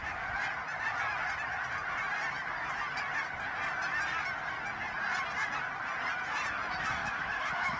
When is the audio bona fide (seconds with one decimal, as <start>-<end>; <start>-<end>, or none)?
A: 0.0-7.0